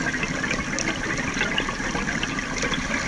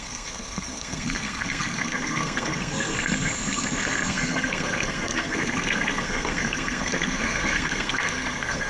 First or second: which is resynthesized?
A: second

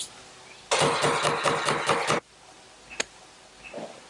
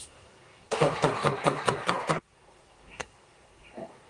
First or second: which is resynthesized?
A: second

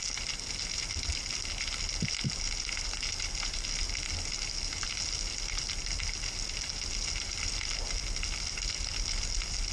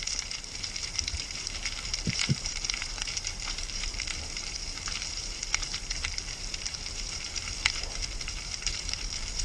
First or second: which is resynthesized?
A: second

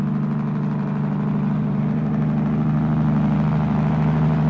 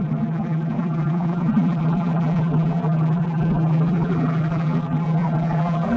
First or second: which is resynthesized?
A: second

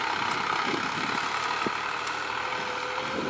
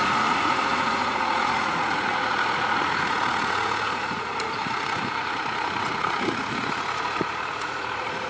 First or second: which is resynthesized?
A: second